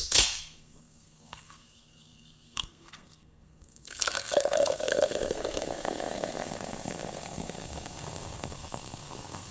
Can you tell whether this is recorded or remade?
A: remade